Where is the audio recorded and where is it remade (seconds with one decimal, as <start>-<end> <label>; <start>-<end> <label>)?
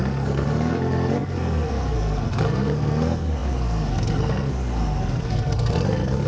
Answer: 0.0-6.3 remade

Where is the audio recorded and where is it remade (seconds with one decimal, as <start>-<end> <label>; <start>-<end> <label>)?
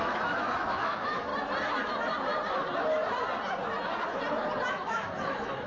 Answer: 0.0-1.3 remade; 1.3-4.7 recorded; 4.7-5.7 remade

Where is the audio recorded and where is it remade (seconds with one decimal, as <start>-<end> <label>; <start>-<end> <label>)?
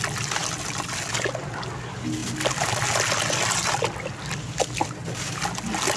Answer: 0.0-6.0 recorded